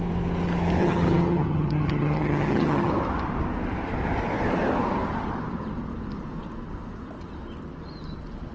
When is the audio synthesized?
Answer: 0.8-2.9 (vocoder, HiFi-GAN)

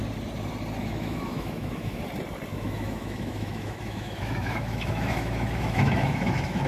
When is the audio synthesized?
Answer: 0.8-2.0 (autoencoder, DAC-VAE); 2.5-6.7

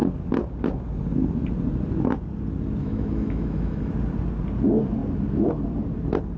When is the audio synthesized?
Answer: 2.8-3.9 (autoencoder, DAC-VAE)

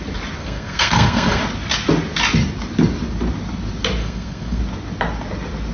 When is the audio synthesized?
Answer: 0.4-1.4 (codec, SNAC); 4.0-4.6